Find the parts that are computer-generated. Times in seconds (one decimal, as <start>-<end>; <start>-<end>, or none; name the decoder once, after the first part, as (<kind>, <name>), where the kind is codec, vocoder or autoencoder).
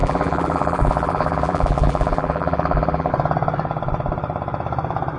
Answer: 0.0-3.1 (vocoder, BigVGAN v2)